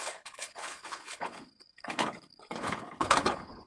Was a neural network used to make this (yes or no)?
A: yes